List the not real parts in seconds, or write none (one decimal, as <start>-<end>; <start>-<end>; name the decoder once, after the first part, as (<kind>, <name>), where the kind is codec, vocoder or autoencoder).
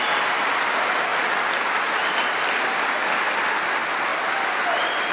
none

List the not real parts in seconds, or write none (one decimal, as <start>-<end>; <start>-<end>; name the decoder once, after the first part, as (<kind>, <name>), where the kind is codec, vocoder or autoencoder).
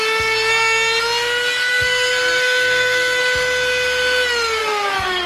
1.7-3.2 (codec, SNAC); 4.6-5.3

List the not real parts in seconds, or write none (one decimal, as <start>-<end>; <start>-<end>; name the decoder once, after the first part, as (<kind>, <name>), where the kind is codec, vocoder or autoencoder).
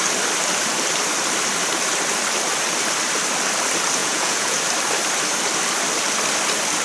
4.0-4.6 (vocoder, Vocos)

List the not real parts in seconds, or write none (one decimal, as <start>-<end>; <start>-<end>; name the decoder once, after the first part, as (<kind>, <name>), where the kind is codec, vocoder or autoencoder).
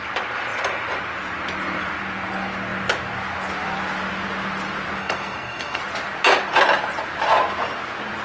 5.0-5.8 (codec, SNAC)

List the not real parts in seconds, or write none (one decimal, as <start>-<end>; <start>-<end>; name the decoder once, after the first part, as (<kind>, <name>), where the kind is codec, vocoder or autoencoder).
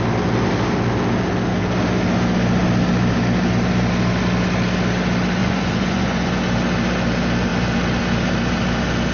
5.4-6.4 (vocoder, Vocos)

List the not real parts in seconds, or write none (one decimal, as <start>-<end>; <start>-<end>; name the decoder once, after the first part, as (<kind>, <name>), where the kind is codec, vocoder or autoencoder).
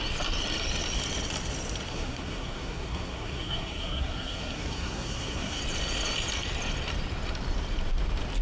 1.9-5.6 (codec, SNAC)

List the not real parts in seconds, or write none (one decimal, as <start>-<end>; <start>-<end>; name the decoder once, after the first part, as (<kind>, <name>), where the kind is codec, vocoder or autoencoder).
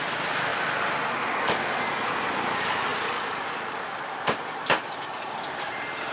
none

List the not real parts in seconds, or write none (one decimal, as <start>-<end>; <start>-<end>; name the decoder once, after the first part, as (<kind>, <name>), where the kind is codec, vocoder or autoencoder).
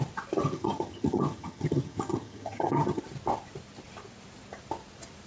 0.4-3.0 (vocoder, HiFi-GAN)